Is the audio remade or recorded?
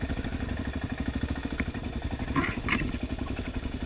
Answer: recorded